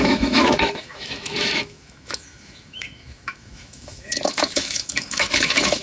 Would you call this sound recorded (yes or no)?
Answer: no